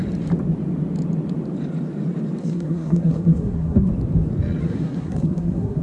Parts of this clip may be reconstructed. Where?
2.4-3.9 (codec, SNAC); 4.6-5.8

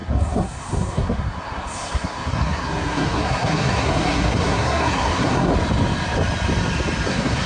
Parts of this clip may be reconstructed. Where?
0.0-5.5 (codec, SNAC); 7.1-7.5